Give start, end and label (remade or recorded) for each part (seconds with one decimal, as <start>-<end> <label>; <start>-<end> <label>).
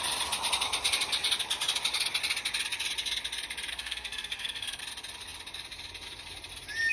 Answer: 0.0-3.7 recorded; 3.7-4.8 remade; 4.8-6.9 recorded